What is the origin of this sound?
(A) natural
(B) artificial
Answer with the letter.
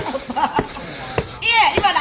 B